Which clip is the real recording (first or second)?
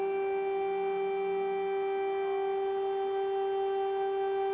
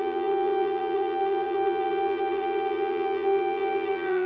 first